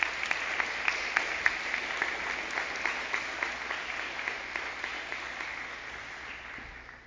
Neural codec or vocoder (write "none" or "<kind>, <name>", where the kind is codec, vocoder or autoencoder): none